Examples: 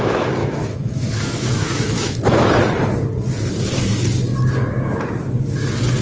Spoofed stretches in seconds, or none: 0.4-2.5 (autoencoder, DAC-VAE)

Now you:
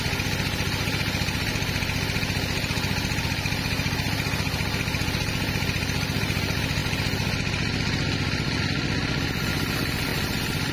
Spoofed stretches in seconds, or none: none

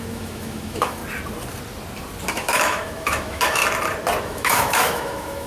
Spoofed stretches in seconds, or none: 0.0-1.0 (autoencoder, DAC-VAE); 2.3-3.6; 4.2-5.5

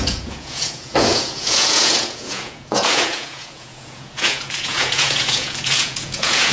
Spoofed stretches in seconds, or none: 0.0-6.5 (vocoder, Vocos)